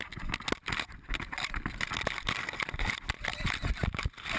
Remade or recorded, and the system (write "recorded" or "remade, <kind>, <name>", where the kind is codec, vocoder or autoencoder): recorded